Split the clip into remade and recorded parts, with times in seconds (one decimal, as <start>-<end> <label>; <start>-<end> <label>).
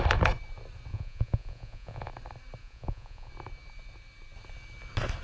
0.0-0.9 recorded; 0.9-2.1 remade; 2.1-2.6 recorded; 2.6-3.3 remade; 3.3-5.2 recorded